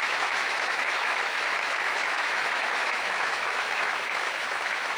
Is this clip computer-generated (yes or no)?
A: yes